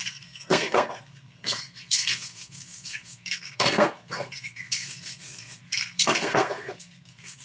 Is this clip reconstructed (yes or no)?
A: yes